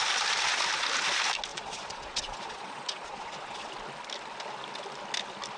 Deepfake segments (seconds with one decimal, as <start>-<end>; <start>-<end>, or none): 1.5-3.7